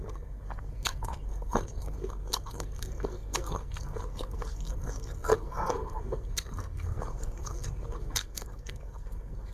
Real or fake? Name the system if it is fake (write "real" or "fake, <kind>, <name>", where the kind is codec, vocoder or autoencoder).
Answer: fake, codec, SNAC